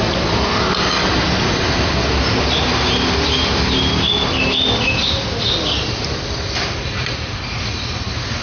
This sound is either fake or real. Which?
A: real